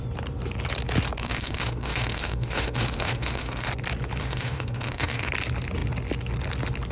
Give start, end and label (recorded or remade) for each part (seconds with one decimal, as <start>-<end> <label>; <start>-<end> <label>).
0.0-1.2 recorded; 1.2-3.7 remade; 3.7-4.2 recorded; 4.2-5.3 remade; 5.3-6.9 recorded